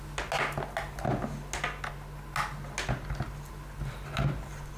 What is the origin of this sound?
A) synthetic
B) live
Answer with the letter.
B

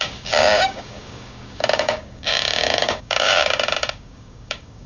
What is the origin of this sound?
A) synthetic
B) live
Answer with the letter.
A